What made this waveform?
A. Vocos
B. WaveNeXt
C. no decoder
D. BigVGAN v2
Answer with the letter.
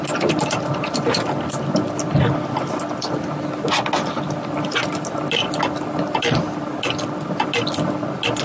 C